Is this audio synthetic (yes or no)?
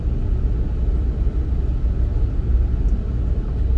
no